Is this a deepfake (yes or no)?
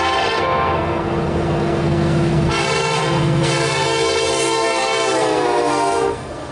yes